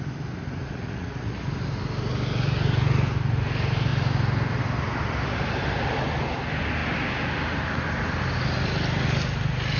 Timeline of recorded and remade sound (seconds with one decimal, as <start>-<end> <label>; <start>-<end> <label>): 0.0-0.6 recorded; 0.6-1.4 remade; 1.4-9.8 recorded